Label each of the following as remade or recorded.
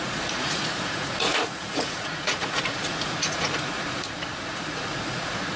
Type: remade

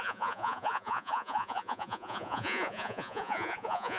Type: remade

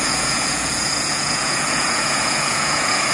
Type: remade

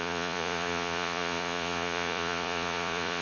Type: remade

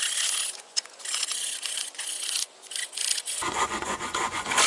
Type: remade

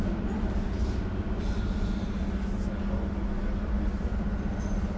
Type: recorded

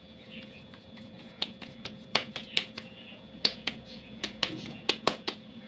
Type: remade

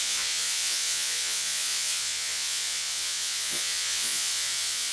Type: remade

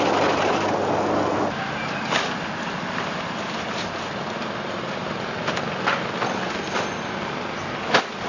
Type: recorded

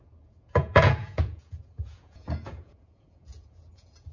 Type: remade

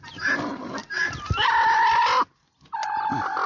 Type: recorded